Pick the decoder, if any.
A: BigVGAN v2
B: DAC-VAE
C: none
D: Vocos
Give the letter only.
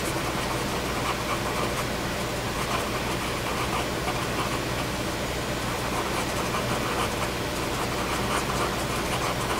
C